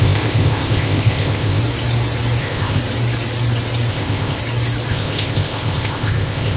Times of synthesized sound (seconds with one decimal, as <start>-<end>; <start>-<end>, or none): 0.0-1.6; 2.4-2.8; 3.9-4.4; 4.9-6.6